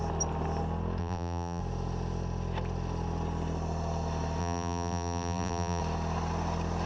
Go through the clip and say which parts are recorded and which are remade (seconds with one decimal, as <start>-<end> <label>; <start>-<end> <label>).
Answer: 0.0-1.0 recorded; 1.0-1.6 remade; 1.6-4.4 recorded; 4.4-5.8 remade; 5.8-6.9 recorded